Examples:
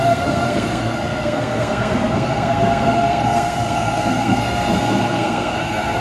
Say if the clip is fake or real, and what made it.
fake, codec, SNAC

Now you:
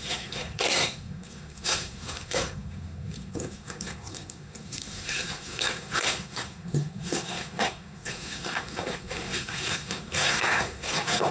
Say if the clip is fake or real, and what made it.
fake, codec, SNAC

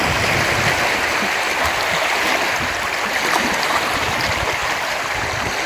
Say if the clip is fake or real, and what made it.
real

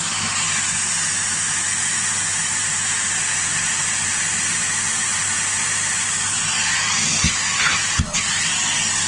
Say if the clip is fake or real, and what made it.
real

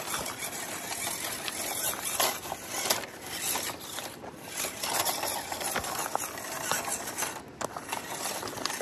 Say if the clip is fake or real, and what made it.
real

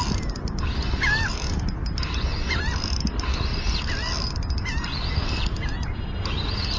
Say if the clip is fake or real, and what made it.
real